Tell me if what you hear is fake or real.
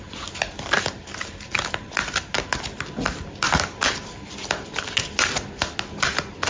real